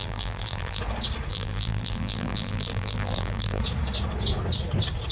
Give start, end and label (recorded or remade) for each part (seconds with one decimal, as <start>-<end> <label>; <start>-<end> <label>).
0.0-0.8 remade; 0.8-1.3 recorded; 1.3-3.6 remade; 3.6-5.1 recorded